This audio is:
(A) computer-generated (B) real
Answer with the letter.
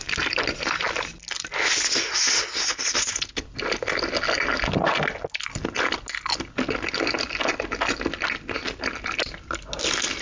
B